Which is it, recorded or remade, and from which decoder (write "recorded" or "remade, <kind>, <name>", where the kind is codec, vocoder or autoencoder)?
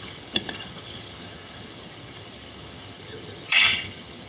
remade, vocoder, HiFi-GAN